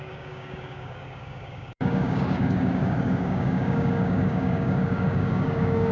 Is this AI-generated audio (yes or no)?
yes